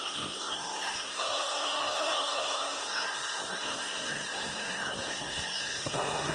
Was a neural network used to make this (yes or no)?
yes